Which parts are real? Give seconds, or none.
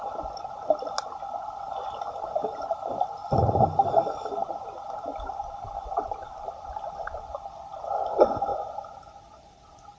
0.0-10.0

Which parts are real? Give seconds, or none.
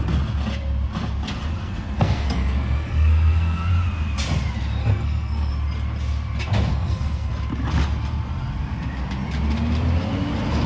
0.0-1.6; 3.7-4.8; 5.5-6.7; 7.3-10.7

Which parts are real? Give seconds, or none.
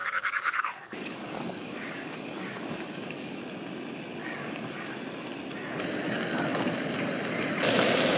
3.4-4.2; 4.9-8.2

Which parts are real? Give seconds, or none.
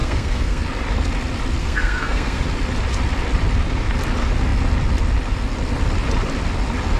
0.6-1.6; 2.4-7.0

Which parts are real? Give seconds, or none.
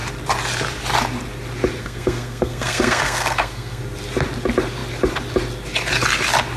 0.0-1.8; 3.8-6.6